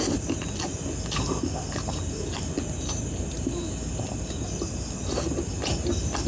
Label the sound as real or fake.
real